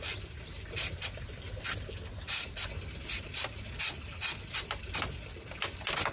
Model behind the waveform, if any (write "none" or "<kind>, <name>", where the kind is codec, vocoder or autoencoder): none